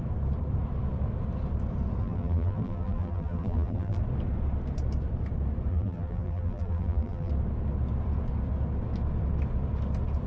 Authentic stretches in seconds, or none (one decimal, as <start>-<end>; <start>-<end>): 0.0-2.0; 4.0-5.7; 7.3-10.3